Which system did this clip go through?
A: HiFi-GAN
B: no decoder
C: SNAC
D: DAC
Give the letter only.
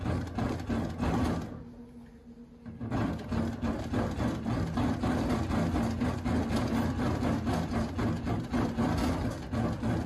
B